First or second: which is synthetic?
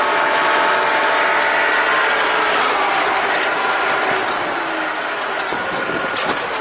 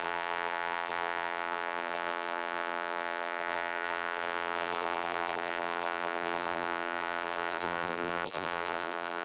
second